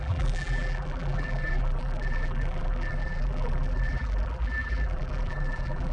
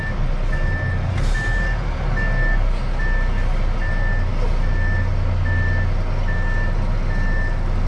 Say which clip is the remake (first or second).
first